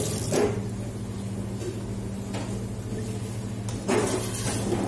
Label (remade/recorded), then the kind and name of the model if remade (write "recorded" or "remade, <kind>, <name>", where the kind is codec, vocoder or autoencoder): recorded